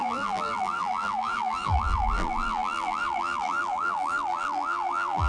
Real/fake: fake